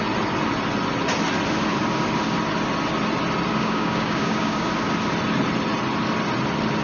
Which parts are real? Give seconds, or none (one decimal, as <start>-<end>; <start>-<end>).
0.0-3.5; 4.7-6.8